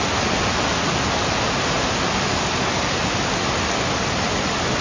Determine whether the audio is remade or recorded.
recorded